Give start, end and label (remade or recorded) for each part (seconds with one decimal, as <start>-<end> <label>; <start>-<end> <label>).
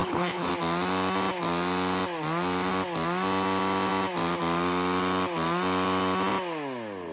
0.0-0.5 remade; 0.5-7.1 recorded